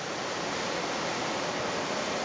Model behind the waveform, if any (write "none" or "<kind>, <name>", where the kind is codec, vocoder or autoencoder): none